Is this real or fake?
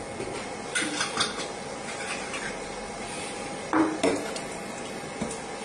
real